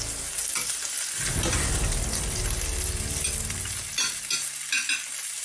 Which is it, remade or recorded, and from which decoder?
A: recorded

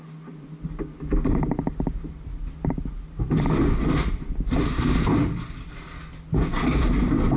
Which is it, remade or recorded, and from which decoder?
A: recorded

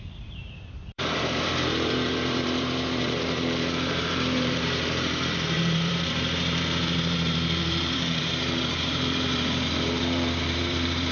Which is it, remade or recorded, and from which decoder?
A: remade, vocoder, BigVGAN v2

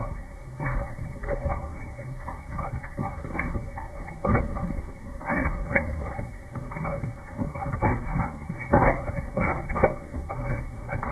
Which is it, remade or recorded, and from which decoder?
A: remade, codec, SNAC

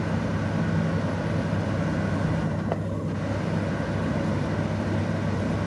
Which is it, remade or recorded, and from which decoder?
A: recorded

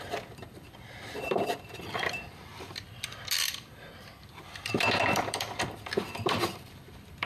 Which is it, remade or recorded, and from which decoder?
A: remade, vocoder, BigVGAN v2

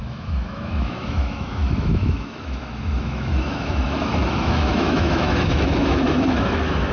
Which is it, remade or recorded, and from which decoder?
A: remade, autoencoder, DAC-VAE